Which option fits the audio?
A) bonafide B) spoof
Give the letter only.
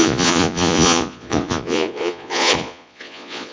B